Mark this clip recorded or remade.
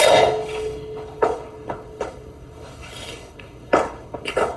remade